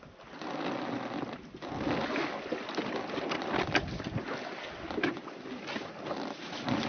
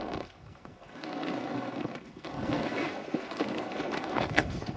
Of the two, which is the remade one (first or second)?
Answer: second